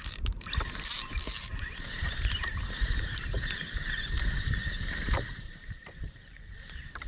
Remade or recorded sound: remade